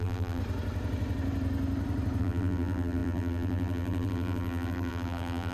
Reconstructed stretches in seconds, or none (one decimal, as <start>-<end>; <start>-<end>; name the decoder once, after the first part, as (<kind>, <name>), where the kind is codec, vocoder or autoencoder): 0.0-0.4 (vocoder, BigVGAN v2); 2.2-5.5